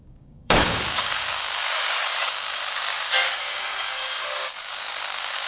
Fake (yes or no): yes